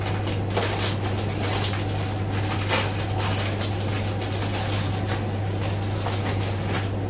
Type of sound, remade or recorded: recorded